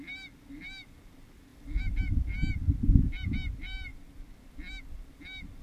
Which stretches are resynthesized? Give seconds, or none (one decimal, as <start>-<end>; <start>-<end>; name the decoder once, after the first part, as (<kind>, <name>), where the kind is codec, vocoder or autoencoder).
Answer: none